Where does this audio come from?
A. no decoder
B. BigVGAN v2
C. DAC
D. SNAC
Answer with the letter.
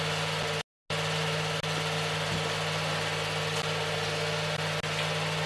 A